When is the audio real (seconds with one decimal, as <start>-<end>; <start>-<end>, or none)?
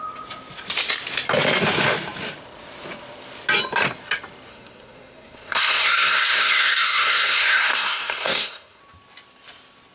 0.0-4.5; 8.8-9.9